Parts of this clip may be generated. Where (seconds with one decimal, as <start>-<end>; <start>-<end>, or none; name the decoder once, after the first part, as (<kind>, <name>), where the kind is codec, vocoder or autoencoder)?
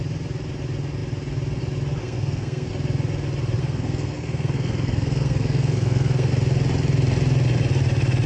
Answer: 2.0-2.7 (codec, SNAC); 3.6-6.3